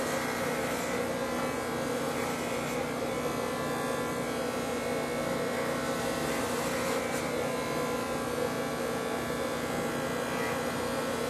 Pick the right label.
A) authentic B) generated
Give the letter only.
A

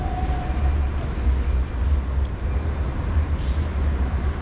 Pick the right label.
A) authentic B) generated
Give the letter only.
A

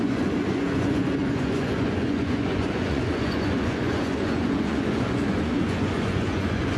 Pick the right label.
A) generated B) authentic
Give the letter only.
A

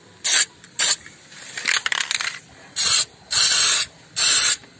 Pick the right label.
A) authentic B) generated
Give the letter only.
B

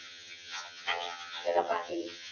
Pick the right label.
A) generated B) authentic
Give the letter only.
A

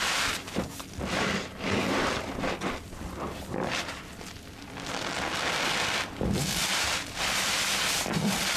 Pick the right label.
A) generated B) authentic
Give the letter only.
A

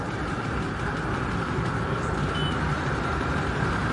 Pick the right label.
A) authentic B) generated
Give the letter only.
A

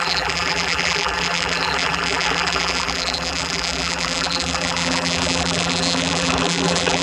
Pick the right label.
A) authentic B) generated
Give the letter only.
B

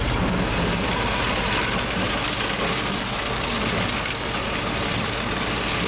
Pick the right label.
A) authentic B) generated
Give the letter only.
A